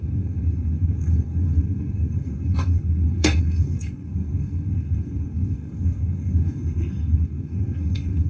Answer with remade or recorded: remade